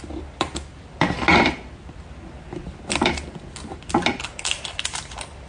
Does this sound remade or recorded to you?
recorded